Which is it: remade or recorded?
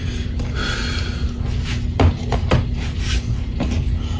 recorded